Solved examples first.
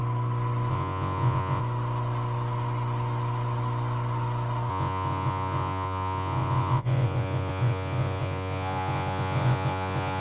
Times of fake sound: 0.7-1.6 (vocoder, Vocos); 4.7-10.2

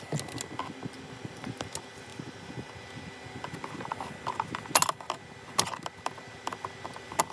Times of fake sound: none

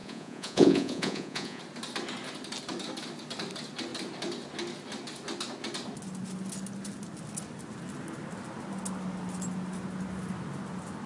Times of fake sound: 0.0-1.6 (vocoder, Vocos)

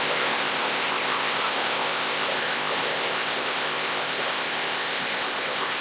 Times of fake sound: 0.0-5.8 (codec, ZipCodec)

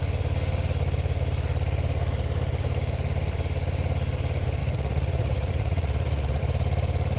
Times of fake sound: 4.6-6.4 (vocoder, Vocos)

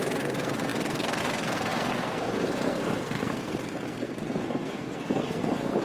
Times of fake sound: 0.0-5.8 (codec, SNAC)